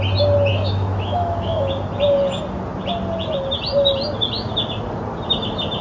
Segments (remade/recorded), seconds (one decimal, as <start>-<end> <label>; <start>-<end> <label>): 0.0-0.5 recorded; 0.5-1.7 remade; 1.7-5.8 recorded